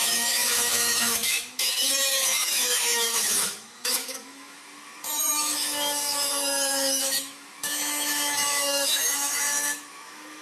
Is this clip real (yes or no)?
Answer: no